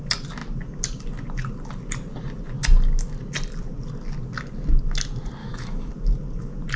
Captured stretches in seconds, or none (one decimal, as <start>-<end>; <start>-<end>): 0.0-5.4; 5.9-6.8